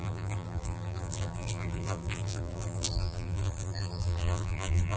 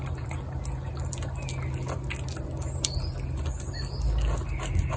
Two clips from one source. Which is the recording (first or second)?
second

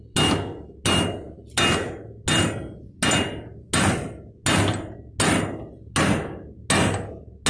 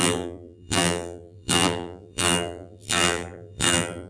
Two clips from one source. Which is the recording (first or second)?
first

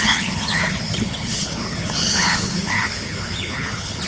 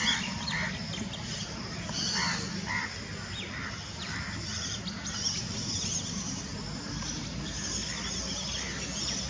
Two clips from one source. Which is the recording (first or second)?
second